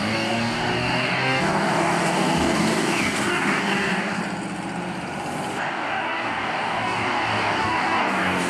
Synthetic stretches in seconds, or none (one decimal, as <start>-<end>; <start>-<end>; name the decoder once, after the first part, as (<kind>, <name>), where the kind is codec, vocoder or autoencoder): 0.0-4.2 (codec, DAC); 5.6-8.5